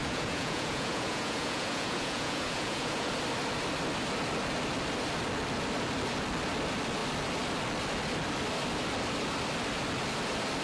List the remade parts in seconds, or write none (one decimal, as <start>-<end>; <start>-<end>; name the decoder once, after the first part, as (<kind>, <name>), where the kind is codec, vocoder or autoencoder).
0.0-3.2 (vocoder, Vocos)